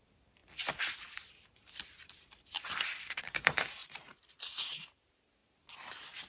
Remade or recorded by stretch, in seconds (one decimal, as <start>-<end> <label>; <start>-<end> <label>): 0.0-6.3 remade